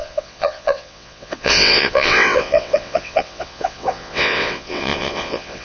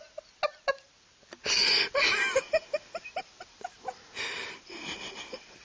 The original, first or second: second